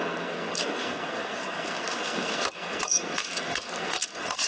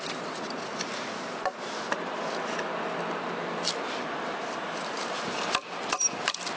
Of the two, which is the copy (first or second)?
first